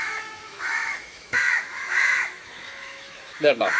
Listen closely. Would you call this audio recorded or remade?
remade